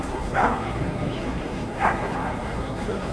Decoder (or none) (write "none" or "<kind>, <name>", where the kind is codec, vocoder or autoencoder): codec, SNAC